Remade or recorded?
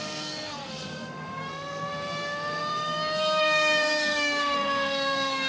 remade